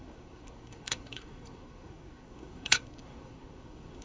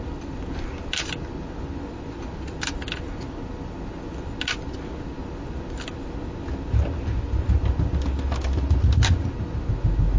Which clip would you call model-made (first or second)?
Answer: first